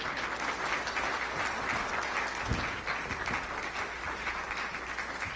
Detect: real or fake real